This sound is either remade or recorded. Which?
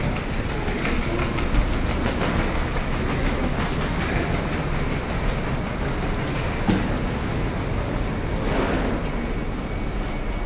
recorded